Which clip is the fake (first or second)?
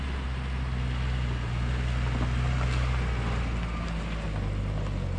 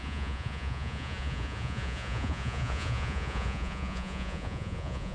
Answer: second